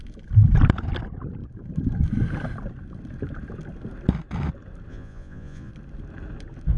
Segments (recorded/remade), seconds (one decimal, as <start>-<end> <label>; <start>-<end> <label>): 0.0-4.9 recorded; 4.9-5.7 remade; 5.7-6.8 recorded